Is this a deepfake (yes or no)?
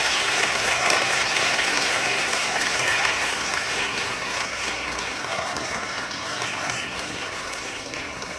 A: yes